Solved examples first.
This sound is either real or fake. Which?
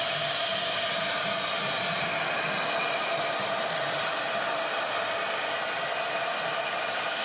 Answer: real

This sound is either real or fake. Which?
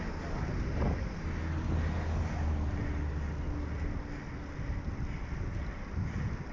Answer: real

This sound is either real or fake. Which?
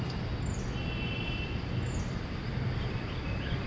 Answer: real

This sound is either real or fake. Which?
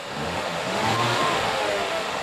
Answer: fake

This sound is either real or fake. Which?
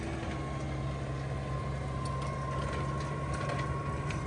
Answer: real